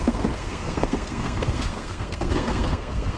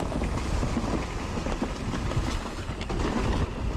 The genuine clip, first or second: second